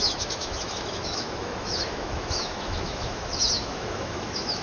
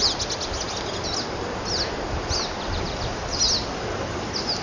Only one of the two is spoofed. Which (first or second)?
first